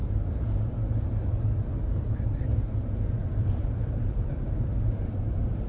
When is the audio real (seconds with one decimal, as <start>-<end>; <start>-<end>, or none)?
0.0-2.4